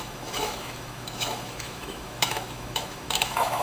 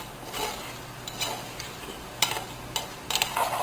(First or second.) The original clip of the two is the second